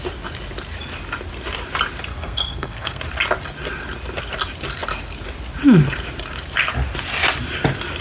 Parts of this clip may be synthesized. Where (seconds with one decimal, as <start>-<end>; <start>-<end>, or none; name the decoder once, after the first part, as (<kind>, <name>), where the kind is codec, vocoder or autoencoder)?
2.1-3.0 (codec, SNAC)